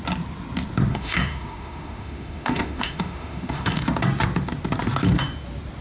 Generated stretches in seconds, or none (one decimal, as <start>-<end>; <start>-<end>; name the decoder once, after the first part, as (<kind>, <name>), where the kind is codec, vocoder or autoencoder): 0.9-3.8 (autoencoder, DAC-VAE)